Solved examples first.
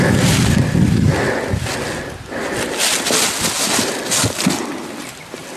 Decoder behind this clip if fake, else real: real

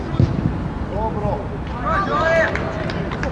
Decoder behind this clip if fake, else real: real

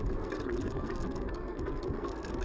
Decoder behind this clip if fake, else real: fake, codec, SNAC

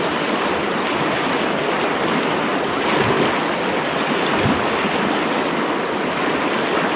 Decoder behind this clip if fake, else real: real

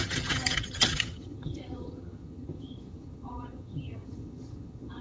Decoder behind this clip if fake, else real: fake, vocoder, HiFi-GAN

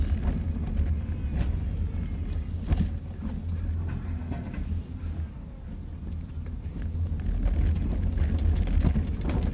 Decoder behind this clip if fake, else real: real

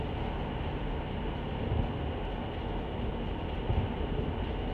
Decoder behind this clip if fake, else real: real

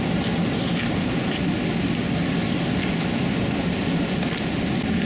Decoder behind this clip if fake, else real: real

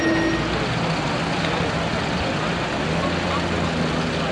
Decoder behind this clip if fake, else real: real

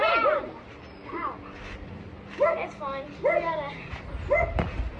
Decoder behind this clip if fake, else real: real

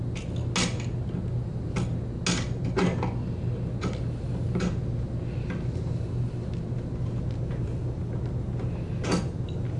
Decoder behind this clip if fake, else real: real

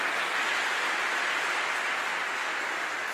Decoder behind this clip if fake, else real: real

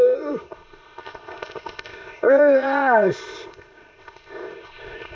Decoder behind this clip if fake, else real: fake, codec, ZipCodec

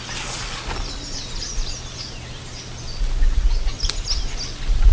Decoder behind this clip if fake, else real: real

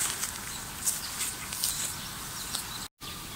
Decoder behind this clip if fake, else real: real